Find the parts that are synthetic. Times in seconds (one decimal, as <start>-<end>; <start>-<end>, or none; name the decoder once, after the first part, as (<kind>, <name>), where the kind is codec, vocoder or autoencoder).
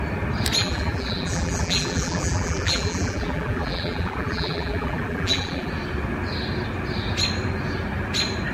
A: 0.6-5.7 (vocoder, BigVGAN v2)